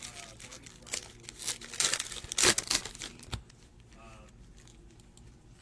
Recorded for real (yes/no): yes